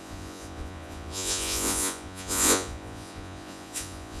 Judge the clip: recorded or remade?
remade